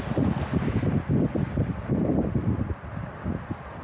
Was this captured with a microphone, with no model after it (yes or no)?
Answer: yes